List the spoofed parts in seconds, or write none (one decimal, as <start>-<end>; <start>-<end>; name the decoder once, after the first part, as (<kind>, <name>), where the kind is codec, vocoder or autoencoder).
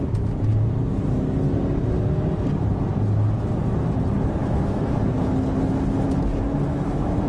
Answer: 4.4-5.0 (autoencoder, DAC-VAE); 6.7-7.3